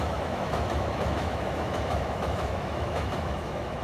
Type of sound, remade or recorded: remade